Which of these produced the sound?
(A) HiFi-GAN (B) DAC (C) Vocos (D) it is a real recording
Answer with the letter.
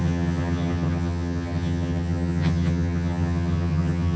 A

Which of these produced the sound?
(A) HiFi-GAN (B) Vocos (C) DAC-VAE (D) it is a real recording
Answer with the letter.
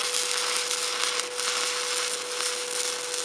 D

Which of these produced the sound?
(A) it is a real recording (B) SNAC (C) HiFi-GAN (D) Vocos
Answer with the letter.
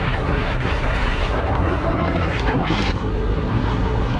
B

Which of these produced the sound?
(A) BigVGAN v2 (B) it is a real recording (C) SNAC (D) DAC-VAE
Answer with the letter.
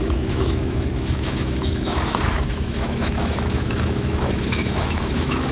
D